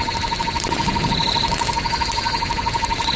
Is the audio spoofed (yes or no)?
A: no